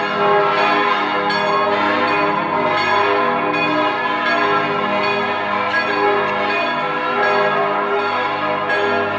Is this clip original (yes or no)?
yes